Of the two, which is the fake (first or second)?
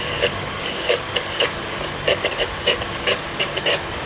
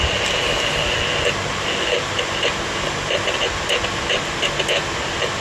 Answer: first